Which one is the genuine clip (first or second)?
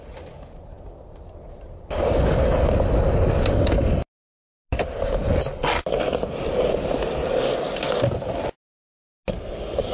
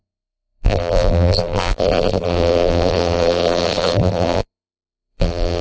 first